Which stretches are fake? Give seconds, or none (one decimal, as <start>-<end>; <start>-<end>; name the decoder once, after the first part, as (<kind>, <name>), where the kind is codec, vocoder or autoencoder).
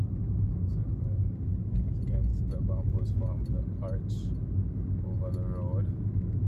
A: none